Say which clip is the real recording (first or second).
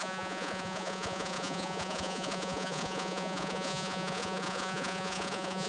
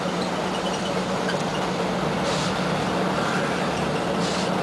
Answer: second